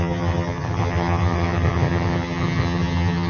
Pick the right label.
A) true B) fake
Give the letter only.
B